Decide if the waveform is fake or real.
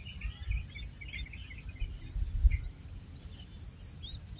real